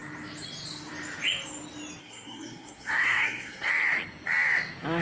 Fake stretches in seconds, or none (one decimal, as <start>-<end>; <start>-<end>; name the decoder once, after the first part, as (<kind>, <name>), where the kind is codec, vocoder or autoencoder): 2.0-3.7 (codec, SNAC)